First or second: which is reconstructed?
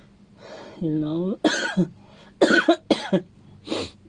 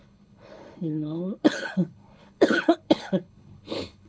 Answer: second